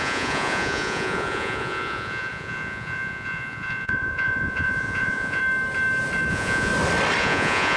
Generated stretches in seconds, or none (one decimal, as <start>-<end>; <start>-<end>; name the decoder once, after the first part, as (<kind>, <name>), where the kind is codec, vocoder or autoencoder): 0.0-5.4 (vocoder, Vocos); 6.3-6.7; 7.2-7.8